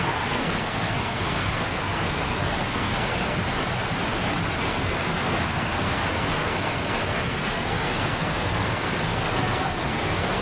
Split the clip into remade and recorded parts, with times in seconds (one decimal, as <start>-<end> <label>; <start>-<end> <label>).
0.0-3.6 remade; 3.6-4.6 recorded; 4.6-10.4 remade